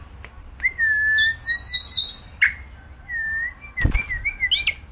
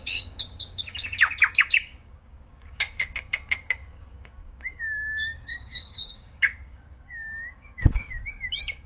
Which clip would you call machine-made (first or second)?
second